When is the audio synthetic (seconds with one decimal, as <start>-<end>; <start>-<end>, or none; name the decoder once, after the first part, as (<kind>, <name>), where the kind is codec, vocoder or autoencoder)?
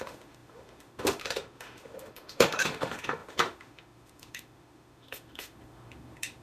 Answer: 0.0-6.4 (autoencoder, DAC-VAE)